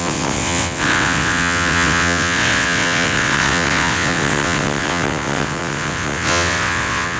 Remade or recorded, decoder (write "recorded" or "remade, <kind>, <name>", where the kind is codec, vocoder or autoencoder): remade, vocoder, WaveNeXt